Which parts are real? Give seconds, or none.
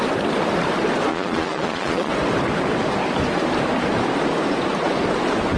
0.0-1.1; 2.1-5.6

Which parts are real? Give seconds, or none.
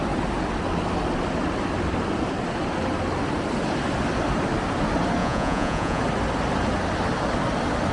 0.0-5.2; 6.0-7.9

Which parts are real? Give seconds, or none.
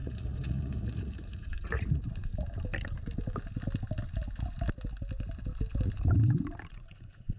2.3-6.7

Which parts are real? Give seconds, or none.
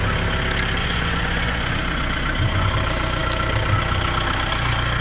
0.0-0.8; 2.7-5.0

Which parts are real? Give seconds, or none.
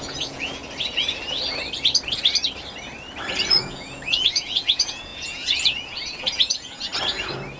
0.6-3.6; 6.9-7.6